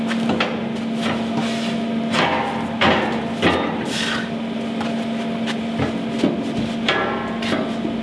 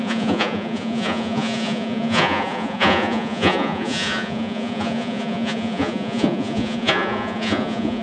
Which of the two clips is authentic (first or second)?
first